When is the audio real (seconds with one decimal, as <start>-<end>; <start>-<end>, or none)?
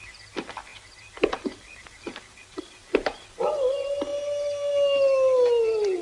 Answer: 0.0-0.7; 2.6-6.0